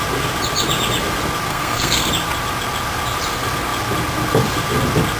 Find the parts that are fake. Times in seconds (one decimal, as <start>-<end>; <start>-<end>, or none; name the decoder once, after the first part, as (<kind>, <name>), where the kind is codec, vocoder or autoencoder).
1.5-2.1 (codec, SNAC)